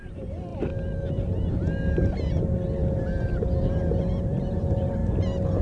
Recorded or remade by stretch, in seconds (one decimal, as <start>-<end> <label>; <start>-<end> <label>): 0.0-0.5 remade; 0.5-3.9 recorded; 3.9-5.0 remade; 5.0-5.6 recorded